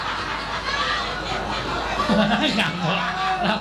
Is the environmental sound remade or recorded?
recorded